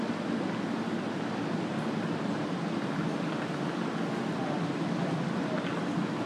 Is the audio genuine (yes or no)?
yes